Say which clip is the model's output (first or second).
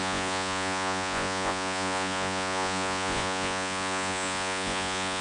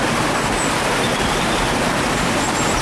first